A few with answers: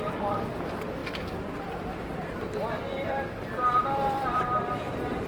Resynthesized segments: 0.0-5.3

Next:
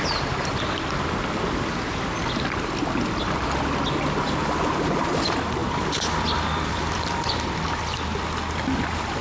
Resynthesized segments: 5.6-7.8

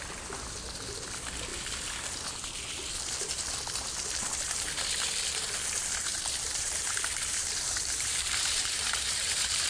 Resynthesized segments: 6.1-9.7

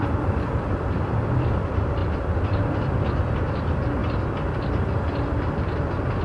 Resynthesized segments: 0.0-4.0; 5.6-6.2

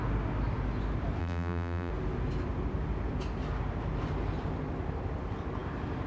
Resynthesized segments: 1.2-1.9

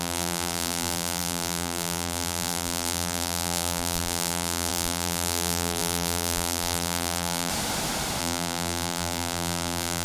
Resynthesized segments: 0.0-7.5; 8.2-10.0

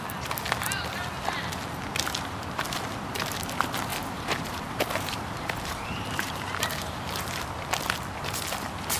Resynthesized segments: 3.9-7.5